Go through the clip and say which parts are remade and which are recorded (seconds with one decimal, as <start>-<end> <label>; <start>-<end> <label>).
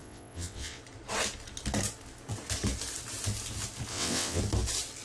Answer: 0.0-0.8 remade; 0.8-3.9 recorded; 3.9-4.4 remade; 4.4-5.0 recorded